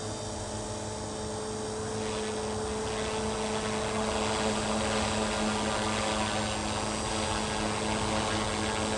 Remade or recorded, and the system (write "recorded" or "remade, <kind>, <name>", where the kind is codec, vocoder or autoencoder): recorded